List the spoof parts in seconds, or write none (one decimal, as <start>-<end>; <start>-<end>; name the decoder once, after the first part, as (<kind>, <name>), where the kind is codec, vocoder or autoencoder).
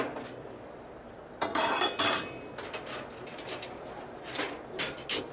1.5-2.0 (vocoder, BigVGAN v2)